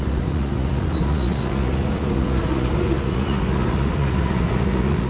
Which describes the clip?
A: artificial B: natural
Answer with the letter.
A